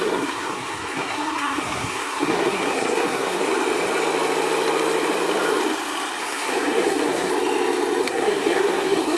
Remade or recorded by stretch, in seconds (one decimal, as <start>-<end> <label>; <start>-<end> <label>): 0.0-3.4 remade; 3.4-6.2 recorded; 6.2-7.3 remade; 7.3-8.0 recorded; 8.0-9.2 remade